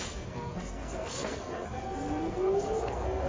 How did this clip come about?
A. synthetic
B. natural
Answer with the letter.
A